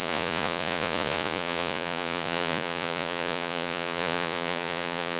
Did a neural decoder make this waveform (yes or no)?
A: yes